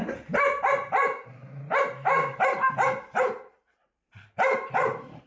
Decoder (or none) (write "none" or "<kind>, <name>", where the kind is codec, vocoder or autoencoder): vocoder, BigVGAN v2